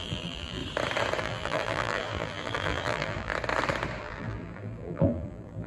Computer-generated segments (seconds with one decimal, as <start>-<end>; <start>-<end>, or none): 0.0-0.6; 1.2-3.3; 4.0-5.7